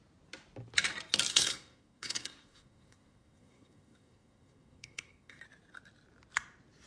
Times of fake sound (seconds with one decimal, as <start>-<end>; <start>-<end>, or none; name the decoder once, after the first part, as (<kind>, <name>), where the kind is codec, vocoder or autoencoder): 1.3-5.4 (codec, SNAC)